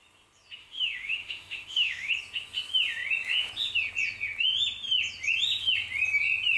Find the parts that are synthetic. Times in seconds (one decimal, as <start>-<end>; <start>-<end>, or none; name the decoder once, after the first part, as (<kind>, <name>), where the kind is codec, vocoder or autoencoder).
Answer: 0.6-2.1 (autoencoder, DAC-VAE)